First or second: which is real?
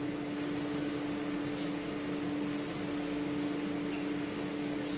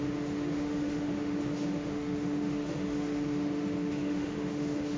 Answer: first